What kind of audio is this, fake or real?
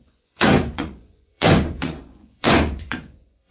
fake